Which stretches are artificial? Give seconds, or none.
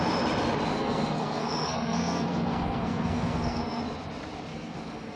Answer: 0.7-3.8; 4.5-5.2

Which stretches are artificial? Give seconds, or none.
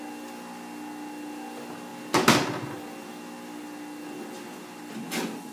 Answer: none